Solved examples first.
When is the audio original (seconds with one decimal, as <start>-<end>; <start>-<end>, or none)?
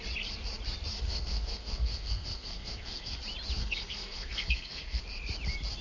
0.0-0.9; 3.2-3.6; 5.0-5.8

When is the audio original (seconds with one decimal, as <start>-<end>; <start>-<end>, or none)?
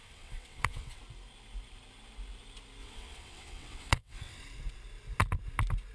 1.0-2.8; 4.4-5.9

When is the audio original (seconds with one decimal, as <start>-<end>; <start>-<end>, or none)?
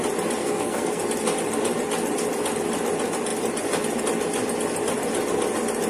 0.0-0.4; 1.0-5.9